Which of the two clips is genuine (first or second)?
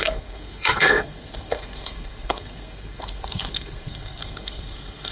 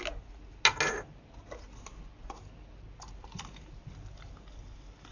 second